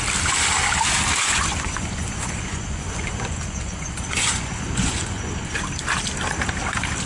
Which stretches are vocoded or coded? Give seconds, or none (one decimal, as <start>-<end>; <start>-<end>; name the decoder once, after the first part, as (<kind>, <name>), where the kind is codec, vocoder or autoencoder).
1.2-5.5 (vocoder, Vocos)

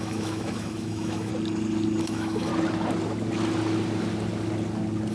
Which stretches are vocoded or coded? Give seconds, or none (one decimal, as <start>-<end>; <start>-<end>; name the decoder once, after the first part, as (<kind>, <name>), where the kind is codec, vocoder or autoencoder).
0.0-1.3 (autoencoder, DAC-VAE); 2.0-2.5

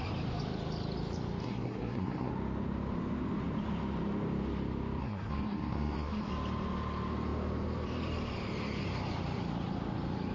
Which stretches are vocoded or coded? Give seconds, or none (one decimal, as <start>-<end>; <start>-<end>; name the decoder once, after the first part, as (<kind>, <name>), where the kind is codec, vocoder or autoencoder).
1.4-2.3 (codec, SNAC); 5.0-6.3

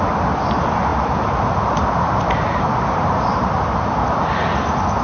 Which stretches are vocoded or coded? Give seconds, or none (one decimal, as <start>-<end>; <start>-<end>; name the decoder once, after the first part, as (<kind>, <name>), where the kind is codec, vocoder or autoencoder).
0.9-3.9 (vocoder, BigVGAN v2)